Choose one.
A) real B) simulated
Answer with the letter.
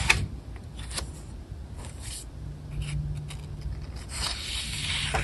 A